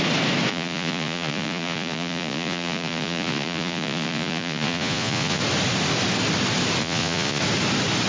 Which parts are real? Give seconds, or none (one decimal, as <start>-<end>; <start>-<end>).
0.0-0.5; 5.4-6.8; 7.4-8.1